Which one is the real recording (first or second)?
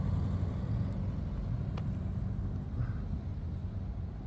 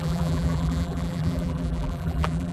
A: first